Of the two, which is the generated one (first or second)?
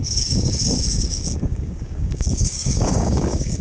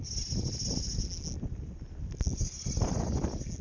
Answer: first